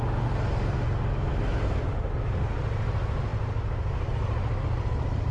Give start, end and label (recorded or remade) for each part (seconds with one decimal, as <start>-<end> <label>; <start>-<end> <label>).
0.0-5.3 recorded